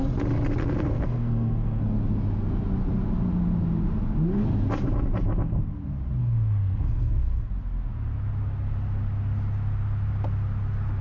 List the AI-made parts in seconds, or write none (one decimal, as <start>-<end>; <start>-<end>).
0.6-1.8; 6.2-7.5

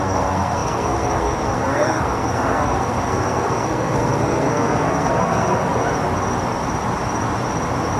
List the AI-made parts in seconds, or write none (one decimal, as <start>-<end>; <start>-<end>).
0.0-5.7

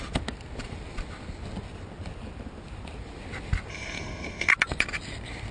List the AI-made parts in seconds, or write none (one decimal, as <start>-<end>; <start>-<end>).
3.7-4.5

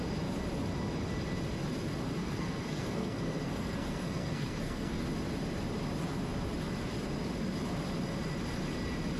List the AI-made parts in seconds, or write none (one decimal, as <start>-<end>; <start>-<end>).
2.2-5.0

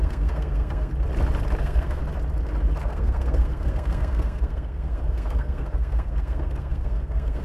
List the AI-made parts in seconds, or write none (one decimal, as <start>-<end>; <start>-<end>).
0.0-0.9; 1.6-2.0; 2.8-7.4

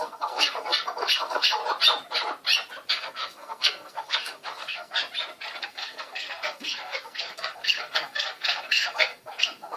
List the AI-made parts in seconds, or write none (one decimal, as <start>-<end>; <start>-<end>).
0.0-1.6; 2.9-5.0; 5.6-9.8